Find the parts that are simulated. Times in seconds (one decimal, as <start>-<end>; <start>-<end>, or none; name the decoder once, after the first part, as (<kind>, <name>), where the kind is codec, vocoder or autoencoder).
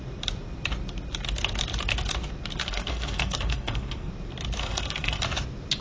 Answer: 2.6-4.1 (codec, SNAC); 4.6-5.2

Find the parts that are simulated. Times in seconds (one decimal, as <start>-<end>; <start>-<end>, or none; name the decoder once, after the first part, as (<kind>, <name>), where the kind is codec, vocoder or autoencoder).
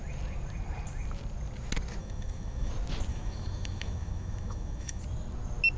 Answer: 2.0-2.7 (autoencoder, DAC-VAE); 3.1-5.0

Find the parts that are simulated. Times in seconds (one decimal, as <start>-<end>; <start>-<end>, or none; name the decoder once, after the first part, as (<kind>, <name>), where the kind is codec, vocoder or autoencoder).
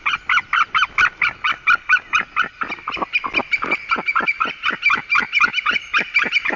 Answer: 3.4-5.1 (vocoder, BigVGAN v2)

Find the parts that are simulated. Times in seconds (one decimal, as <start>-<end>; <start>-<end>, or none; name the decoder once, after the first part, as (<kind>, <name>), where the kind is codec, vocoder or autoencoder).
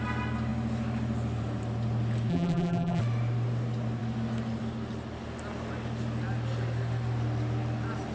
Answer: 2.3-3.0 (vocoder, BigVGAN v2)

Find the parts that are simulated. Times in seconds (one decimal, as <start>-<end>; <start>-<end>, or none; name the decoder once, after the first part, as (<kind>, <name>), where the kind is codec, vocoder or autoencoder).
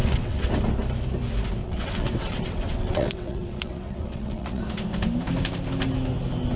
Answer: 0.0-0.5 (vocoder, WaveNeXt); 1.6-4.6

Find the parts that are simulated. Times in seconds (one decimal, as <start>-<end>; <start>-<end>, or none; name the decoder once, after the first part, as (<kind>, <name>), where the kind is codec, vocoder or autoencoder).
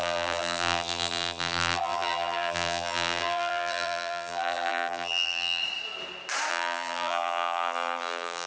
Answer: 0.0-5.6 (vocoder, BigVGAN v2); 6.5-8.5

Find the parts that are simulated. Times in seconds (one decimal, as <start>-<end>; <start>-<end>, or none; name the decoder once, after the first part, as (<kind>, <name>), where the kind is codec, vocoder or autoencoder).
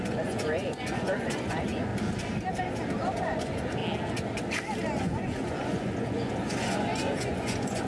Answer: 0.0-1.9 (vocoder, Vocos); 3.2-3.8; 5.0-7.9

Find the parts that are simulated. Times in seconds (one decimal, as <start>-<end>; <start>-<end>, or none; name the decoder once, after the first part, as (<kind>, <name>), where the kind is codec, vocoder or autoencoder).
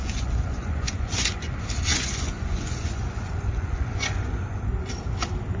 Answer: 0.0-1.5 (vocoder, Vocos); 1.9-4.9